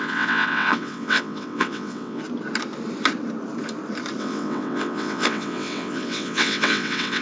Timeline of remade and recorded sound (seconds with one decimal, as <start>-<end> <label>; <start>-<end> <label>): 0.0-2.2 remade; 2.2-4.2 recorded; 4.2-7.2 remade